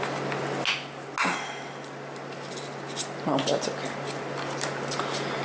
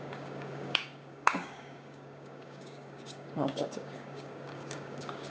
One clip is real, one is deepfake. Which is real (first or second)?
first